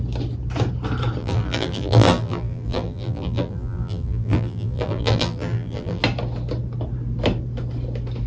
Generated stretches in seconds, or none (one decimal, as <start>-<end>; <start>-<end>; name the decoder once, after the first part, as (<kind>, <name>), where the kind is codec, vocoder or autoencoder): 1.2-6.0 (vocoder, BigVGAN v2)